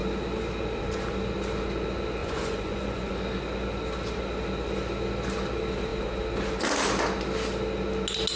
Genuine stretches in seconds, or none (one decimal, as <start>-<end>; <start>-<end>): 0.0-2.2; 3.1-8.4